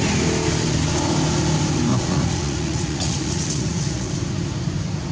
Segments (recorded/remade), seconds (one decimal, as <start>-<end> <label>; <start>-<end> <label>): 0.0-1.9 recorded; 1.9-4.1 remade; 4.1-5.1 recorded